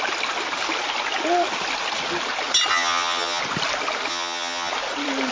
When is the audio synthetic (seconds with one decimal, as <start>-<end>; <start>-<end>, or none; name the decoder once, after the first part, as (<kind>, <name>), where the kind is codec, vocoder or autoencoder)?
2.7-3.4 (vocoder, HiFi-GAN); 4.1-4.7